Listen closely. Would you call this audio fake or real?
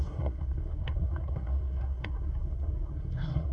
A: fake